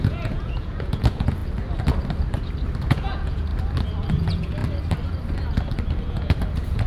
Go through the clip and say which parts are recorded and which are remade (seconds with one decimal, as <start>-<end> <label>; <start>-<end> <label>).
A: 0.0-1.4 remade; 1.4-2.8 recorded; 2.8-3.5 remade; 3.5-4.1 recorded; 4.1-4.6 remade; 4.6-6.1 recorded; 6.1-6.9 remade